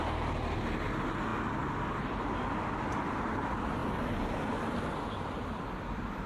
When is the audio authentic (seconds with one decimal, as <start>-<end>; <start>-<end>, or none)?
0.0-6.3